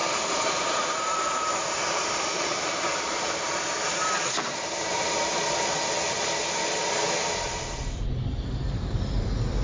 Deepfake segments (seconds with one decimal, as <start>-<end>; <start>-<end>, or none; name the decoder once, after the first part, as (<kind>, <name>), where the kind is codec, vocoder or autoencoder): 0.0-5.8 (vocoder, BigVGAN v2); 7.8-9.6